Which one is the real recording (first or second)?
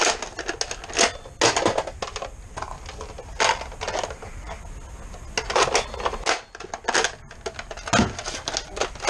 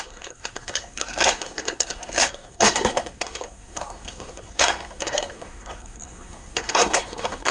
first